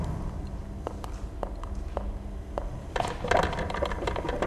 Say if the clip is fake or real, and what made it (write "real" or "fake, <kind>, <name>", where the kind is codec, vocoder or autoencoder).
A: real